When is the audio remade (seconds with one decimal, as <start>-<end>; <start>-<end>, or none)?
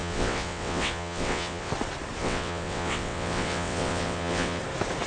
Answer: 0.0-1.7; 2.2-4.6